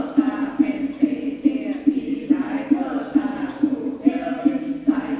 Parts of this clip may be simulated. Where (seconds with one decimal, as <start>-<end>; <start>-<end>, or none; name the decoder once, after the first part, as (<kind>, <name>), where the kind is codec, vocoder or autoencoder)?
3.3-4.4 (vocoder, Vocos)